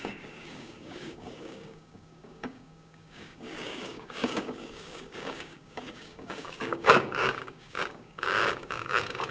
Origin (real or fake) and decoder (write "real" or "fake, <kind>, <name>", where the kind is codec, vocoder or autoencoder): fake, codec, DAC